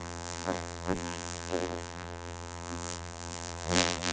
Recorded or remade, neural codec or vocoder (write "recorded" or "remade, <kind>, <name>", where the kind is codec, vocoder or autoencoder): remade, vocoder, BigVGAN v2